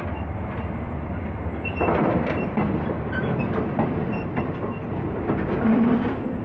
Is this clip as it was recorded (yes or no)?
no